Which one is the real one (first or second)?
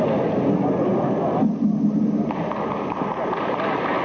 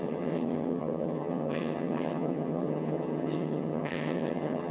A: first